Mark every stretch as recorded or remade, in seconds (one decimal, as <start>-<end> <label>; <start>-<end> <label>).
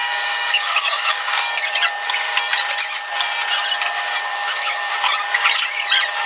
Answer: 0.0-1.5 remade; 1.5-4.3 recorded; 4.3-4.9 remade; 4.9-6.3 recorded